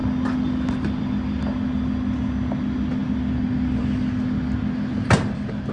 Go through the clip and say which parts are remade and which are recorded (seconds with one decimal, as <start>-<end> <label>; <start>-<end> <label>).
0.0-5.7 recorded